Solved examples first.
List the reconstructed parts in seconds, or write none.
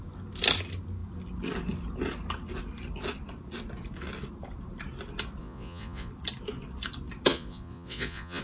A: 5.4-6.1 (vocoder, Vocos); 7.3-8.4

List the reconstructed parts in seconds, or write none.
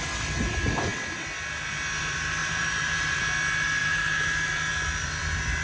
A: 2.4-3.2 (vocoder, BigVGAN v2); 3.8-4.7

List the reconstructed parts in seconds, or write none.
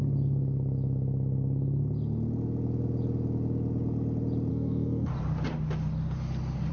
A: 4.5-5.1 (codec, SNAC)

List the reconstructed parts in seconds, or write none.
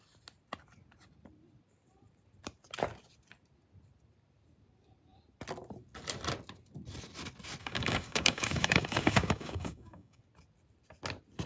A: 7.6-10.2 (codec, DAC)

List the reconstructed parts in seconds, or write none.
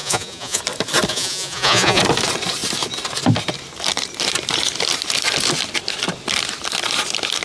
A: 0.0-0.6 (vocoder, Vocos); 1.1-2.0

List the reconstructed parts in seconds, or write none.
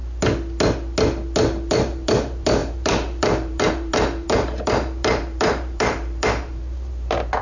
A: 1.7-7.4 (vocoder, BigVGAN v2)